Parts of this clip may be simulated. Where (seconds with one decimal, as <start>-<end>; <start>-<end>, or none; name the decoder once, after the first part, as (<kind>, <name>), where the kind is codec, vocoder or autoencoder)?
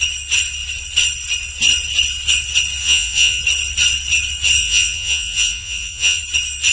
2.8-3.4 (vocoder, Vocos); 4.6-6.2